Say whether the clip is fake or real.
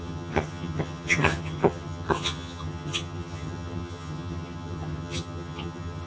fake